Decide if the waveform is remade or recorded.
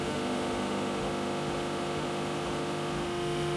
remade